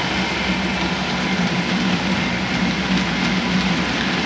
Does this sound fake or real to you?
real